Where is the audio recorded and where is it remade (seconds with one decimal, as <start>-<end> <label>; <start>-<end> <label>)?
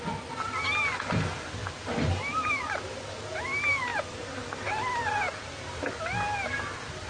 0.0-7.1 recorded